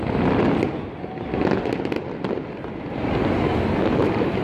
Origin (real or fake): real